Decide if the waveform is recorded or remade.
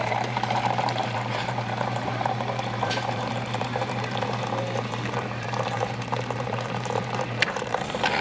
remade